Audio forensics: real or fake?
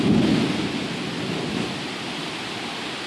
real